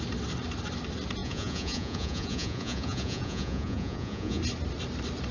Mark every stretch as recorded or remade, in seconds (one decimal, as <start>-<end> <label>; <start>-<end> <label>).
0.0-1.2 recorded; 1.2-4.4 remade; 4.4-5.3 recorded